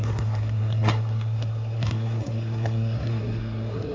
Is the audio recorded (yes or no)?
no